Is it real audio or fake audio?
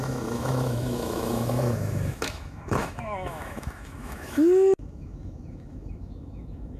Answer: fake